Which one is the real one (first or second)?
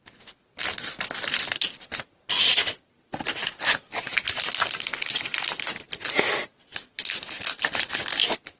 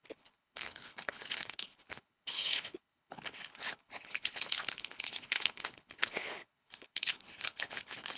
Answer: first